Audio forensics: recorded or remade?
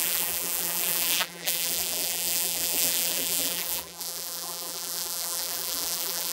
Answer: remade